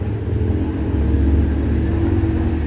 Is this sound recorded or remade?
recorded